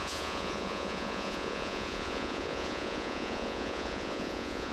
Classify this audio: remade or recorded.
remade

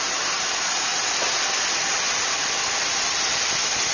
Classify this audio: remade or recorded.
recorded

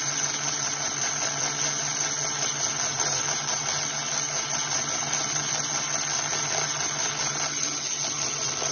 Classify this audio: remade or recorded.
recorded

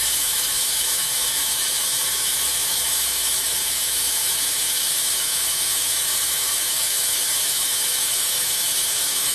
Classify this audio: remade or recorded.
remade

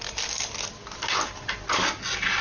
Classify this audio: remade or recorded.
recorded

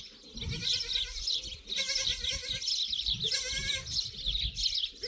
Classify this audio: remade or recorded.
recorded